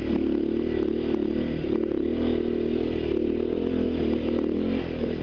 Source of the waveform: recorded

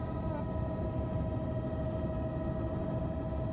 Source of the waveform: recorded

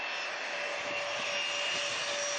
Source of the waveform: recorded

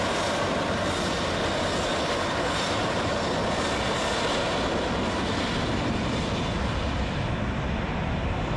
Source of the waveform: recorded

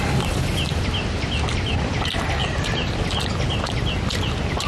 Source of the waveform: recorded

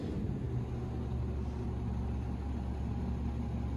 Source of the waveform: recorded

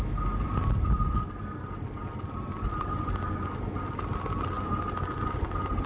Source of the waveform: recorded